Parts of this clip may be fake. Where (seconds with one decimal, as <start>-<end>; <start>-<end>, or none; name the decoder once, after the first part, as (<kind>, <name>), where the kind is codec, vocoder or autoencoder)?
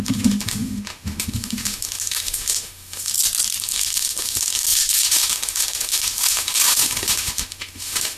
0.0-3.1 (autoencoder, DAC-VAE); 3.6-8.2